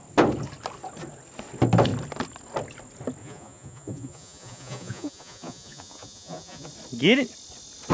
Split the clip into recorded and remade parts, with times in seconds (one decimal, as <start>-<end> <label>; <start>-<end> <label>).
0.0-3.2 recorded; 3.2-6.7 remade; 6.7-7.9 recorded